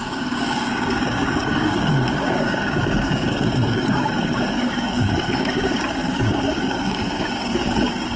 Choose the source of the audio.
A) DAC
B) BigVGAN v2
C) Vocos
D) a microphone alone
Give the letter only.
A